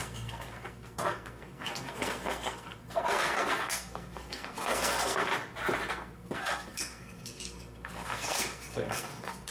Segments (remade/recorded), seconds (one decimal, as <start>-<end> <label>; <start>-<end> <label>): 0.0-5.3 remade; 5.3-5.9 recorded; 5.9-9.5 remade